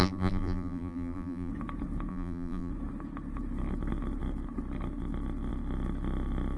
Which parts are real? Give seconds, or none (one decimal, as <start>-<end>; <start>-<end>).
1.5-2.1; 2.7-6.6